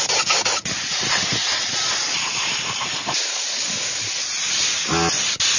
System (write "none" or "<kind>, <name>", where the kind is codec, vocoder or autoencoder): none